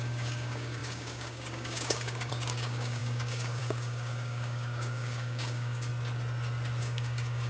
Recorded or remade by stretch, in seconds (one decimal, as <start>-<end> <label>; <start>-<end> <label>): 0.0-5.9 remade; 5.9-6.8 recorded; 6.8-7.5 remade